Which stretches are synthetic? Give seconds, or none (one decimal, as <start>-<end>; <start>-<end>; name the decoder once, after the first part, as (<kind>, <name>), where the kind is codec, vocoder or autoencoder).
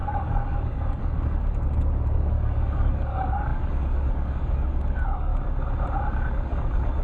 0.0-5.3 (codec, DAC); 6.1-7.0